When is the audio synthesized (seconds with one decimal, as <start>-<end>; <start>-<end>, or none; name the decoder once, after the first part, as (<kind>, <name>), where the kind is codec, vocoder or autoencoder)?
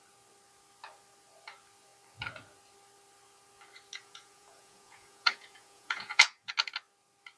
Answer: 4.0-6.5 (vocoder, Vocos)